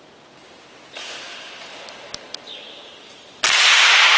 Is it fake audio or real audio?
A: real